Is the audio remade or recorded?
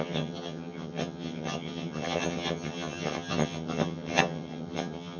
remade